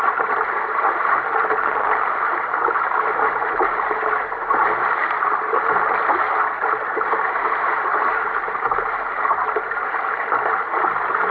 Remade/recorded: recorded